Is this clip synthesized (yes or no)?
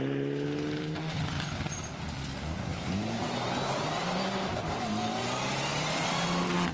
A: no